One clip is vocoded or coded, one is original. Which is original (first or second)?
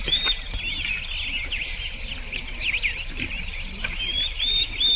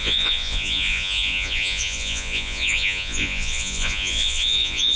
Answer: first